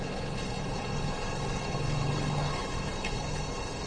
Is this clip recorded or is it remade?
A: remade